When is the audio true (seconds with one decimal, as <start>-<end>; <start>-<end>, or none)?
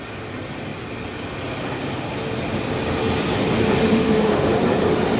0.0-3.9; 4.5-5.2